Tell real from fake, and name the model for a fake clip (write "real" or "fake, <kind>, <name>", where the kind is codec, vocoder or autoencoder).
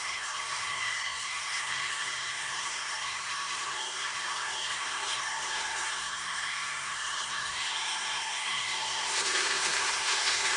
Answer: fake, codec, SNAC